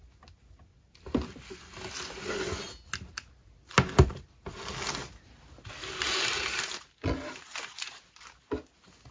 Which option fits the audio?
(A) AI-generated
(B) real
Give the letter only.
B